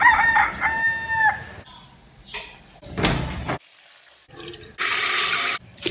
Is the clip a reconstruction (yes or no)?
no